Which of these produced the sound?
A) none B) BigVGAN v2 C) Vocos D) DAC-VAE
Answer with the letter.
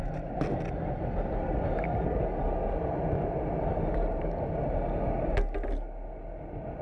A